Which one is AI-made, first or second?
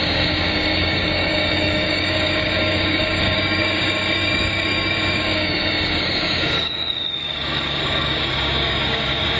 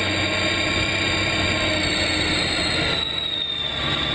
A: first